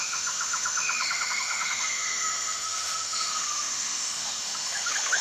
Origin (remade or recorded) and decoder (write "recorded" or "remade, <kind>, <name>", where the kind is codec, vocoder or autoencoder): remade, autoencoder, DAC-VAE